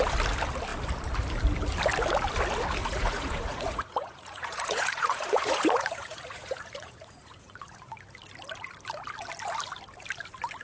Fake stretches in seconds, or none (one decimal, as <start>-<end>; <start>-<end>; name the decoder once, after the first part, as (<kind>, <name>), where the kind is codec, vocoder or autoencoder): 2.8-7.7 (vocoder, Vocos)